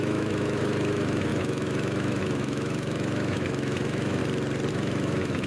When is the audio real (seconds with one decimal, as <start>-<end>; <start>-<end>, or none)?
4.2-4.7